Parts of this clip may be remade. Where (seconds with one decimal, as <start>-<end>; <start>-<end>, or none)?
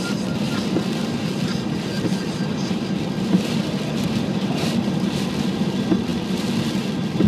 none